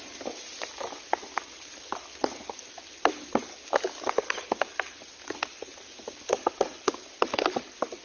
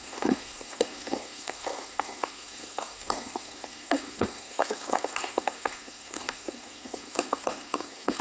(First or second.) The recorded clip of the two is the first